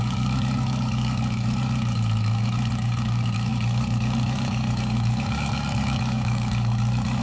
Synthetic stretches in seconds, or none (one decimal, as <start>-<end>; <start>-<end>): 0.0-7.2